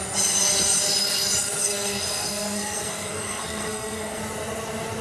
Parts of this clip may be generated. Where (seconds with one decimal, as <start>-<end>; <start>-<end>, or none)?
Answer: 1.6-4.2